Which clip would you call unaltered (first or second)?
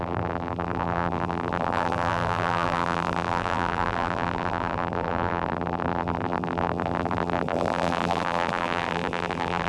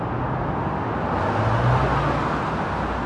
second